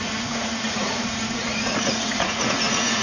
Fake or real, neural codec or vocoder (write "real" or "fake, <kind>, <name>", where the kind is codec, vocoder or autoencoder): fake, vocoder, Vocos